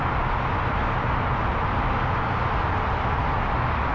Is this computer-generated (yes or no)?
no